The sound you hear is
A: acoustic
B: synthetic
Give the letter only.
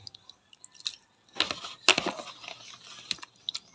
A